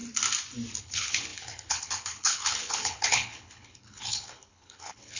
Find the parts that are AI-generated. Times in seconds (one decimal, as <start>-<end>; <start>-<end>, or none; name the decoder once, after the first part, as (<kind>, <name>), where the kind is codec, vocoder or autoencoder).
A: 0.8-5.2 (codec, HILCodec)

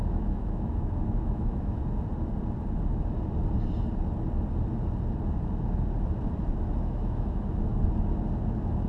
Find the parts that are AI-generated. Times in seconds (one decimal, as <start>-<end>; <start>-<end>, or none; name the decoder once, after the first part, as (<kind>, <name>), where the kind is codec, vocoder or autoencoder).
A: 0.0-1.8 (autoencoder, DAC-VAE); 6.7-7.7

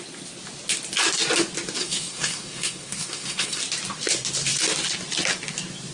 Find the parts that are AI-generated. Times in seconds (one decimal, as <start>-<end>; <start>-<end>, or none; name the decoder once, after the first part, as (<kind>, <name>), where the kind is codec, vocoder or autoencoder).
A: 1.8-3.6 (codec, SNAC)

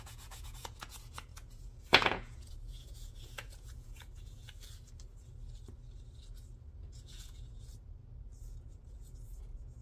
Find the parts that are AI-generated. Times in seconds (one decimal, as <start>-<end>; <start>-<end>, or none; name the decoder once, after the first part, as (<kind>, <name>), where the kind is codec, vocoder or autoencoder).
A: 0.0-4.4 (vocoder, Vocos); 6.8-7.7; 8.4-9.8

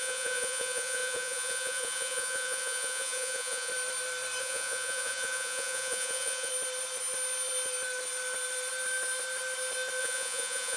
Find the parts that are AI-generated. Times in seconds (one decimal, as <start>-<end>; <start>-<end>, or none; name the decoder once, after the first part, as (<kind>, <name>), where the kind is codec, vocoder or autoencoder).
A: 0.0-3.7 (vocoder, Vocos); 4.4-6.5; 10.0-10.8